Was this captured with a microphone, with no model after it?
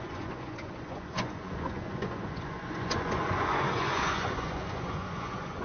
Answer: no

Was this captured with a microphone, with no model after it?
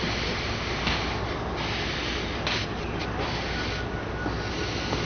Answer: yes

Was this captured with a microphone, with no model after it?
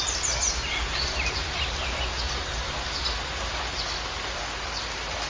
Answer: yes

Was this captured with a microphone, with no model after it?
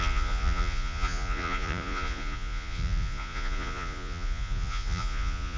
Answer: no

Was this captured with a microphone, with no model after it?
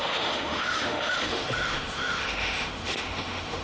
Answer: no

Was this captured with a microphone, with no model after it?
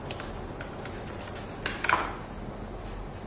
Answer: yes